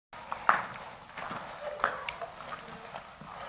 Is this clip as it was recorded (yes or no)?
yes